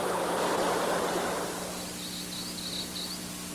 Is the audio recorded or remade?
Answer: recorded